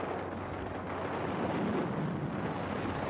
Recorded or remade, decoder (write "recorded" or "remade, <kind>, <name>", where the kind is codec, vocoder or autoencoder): recorded